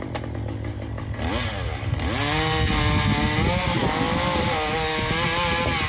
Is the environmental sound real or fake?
real